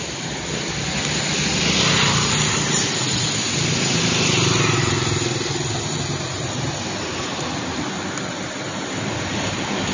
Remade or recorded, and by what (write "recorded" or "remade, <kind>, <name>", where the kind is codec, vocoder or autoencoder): recorded